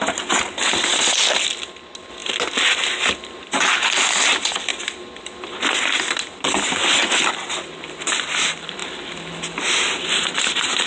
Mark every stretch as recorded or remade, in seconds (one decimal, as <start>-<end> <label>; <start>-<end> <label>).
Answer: 0.0-10.9 recorded

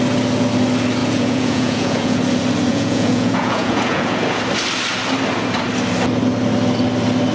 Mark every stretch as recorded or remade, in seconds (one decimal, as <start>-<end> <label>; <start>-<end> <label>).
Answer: 0.0-1.0 recorded; 1.0-2.2 remade; 2.2-2.7 recorded; 2.7-4.4 remade; 4.4-7.3 recorded

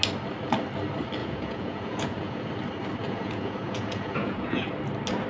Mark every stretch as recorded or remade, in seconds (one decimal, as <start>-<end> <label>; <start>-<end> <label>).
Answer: 0.0-1.2 recorded; 1.2-2.5 remade; 2.5-3.0 recorded; 3.0-4.7 remade; 4.7-5.3 recorded